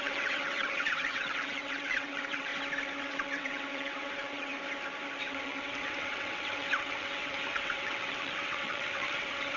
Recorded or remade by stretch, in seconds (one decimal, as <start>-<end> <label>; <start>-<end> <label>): 0.0-2.5 remade; 2.5-3.0 recorded; 3.0-4.5 remade; 4.5-5.2 recorded; 5.2-9.6 remade